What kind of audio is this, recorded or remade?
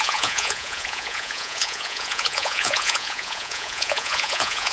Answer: remade